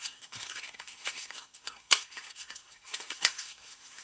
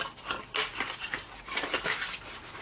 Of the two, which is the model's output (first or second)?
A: first